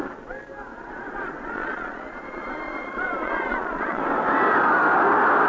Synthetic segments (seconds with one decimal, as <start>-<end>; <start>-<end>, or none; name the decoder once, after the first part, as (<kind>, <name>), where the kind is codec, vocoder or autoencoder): 0.7-4.0 (vocoder, Vocos)